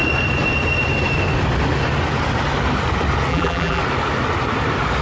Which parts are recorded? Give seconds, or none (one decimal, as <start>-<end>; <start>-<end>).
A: 0.0-3.3; 3.8-5.0